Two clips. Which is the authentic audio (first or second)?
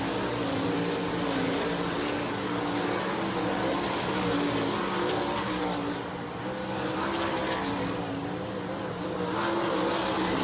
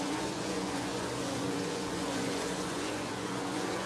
first